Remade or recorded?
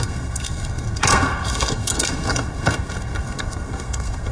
remade